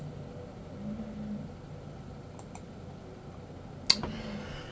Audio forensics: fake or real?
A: real